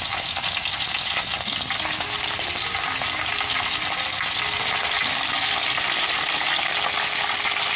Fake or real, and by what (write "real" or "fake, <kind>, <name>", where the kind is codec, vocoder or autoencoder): real